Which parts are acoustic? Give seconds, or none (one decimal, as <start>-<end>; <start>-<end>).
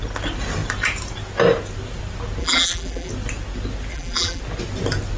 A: 0.0-2.4; 3.1-3.9; 4.4-5.2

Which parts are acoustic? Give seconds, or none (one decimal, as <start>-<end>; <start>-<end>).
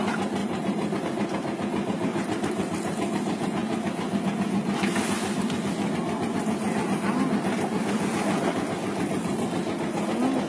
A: 0.0-0.4; 1.0-10.5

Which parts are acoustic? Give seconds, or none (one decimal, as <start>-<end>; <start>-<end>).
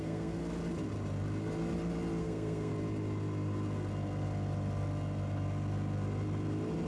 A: 0.4-2.2; 2.7-6.9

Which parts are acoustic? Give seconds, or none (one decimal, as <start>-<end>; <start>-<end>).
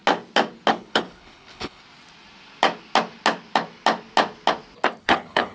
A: 0.0-0.7; 1.8-5.0